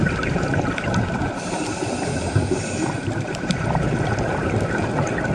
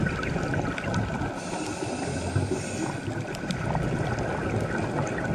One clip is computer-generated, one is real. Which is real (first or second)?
second